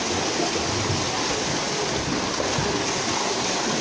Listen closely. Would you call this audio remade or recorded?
recorded